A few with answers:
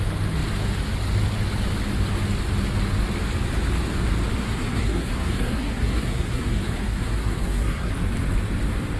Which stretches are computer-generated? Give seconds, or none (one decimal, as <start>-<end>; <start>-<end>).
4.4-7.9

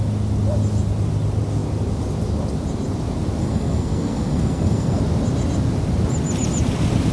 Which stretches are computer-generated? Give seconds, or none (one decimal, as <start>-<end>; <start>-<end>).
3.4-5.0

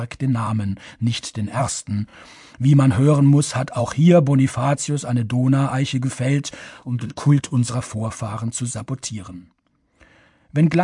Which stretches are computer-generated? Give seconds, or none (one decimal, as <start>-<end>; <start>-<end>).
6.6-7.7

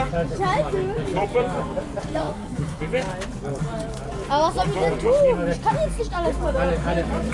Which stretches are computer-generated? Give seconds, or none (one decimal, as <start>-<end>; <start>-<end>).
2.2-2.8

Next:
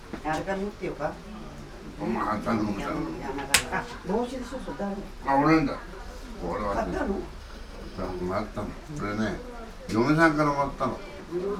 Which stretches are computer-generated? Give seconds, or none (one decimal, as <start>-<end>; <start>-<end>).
7.4-8.2

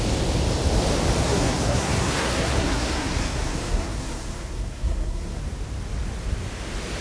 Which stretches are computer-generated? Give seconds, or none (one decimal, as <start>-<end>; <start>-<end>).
1.2-5.4